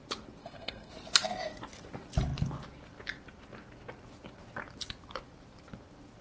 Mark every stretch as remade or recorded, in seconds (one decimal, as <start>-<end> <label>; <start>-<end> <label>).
0.0-0.4 recorded; 0.4-0.9 remade; 0.9-6.2 recorded